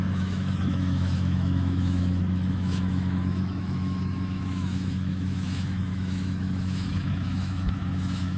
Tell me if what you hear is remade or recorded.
remade